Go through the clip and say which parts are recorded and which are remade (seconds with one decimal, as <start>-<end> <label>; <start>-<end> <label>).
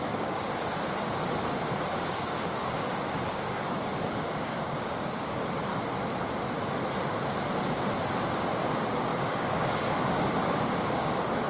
0.0-0.5 remade; 0.5-1.9 recorded; 1.9-5.7 remade; 5.7-8.7 recorded; 8.7-11.5 remade